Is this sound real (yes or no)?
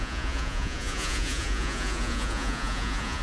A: no